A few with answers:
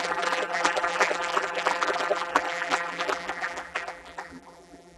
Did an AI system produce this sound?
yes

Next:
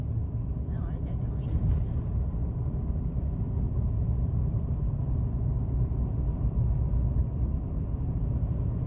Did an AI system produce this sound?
no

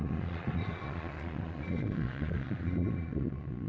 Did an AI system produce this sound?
yes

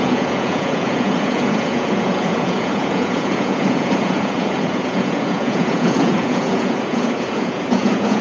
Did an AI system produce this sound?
yes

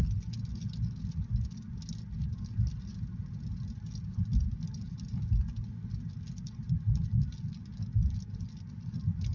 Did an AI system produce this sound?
no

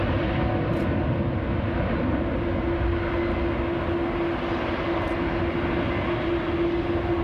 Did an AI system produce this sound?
no